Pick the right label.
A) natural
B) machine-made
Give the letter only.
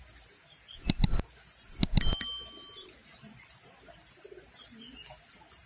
A